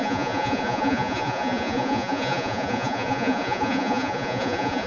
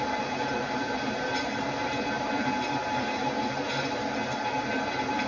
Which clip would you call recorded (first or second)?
second